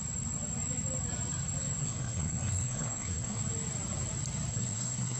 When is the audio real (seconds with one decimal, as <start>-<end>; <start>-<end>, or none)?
0.0-1.8; 3.4-4.5